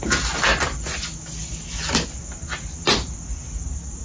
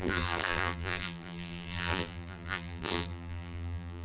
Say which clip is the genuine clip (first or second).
first